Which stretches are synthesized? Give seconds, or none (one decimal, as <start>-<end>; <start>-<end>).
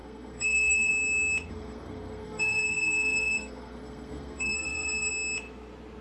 0.0-0.9; 1.5-5.1